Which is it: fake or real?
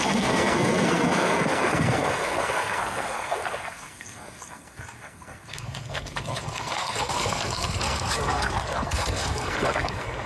fake